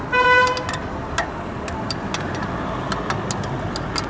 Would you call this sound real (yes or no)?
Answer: yes